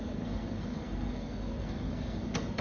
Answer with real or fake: fake